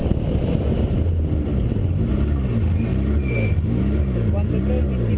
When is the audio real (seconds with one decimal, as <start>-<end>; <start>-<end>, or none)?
0.0-5.2